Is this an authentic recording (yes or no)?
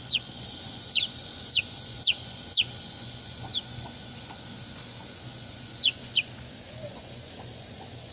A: no